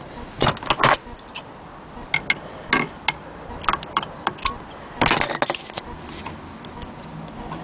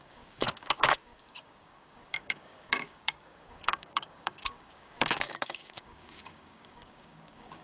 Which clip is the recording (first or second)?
first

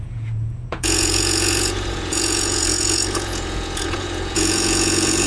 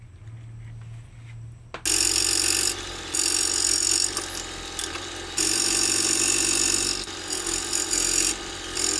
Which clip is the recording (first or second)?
second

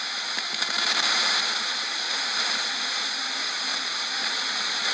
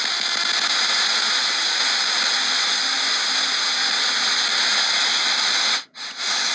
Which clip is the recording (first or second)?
second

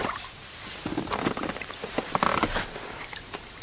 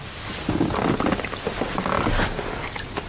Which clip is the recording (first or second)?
second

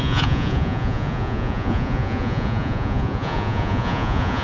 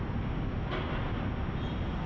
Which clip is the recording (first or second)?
second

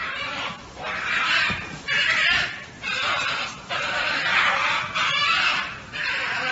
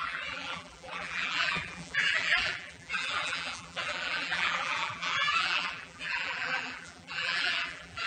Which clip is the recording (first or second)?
first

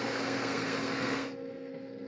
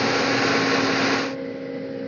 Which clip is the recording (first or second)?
second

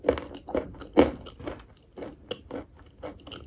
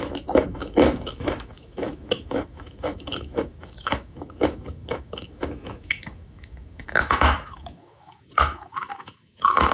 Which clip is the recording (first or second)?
first